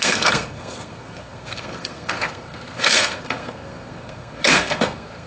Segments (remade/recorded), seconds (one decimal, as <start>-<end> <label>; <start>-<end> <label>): 0.0-5.3 remade

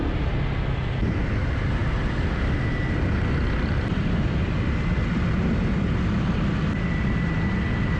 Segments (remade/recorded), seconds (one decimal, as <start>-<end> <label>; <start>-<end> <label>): 0.0-8.0 recorded